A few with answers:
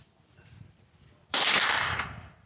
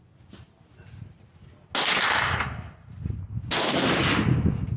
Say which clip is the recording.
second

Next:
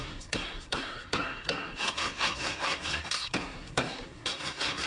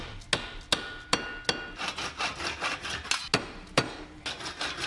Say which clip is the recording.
second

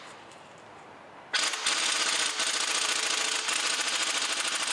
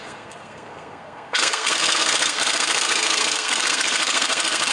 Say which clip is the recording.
first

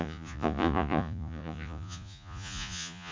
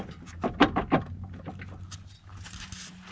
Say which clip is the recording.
second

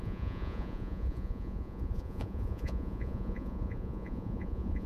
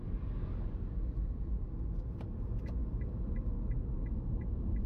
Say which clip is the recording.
second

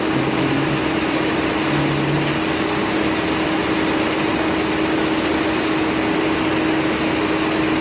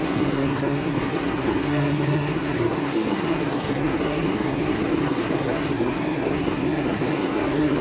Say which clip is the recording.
first